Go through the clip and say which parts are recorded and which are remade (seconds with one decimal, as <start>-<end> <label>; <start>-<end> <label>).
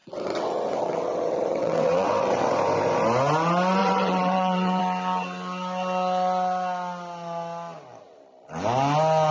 0.0-2.5 remade; 2.5-3.8 recorded; 3.8-4.8 remade; 4.8-9.3 recorded